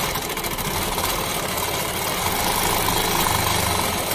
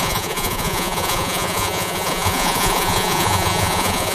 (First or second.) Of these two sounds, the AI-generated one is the second